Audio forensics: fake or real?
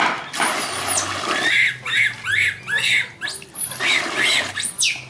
real